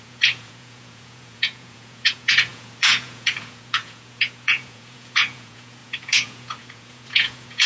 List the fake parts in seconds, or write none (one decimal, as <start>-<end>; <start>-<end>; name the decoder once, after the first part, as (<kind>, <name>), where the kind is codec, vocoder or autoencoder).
0.0-7.7 (vocoder, Vocos)